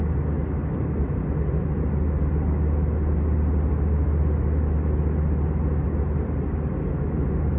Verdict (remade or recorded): recorded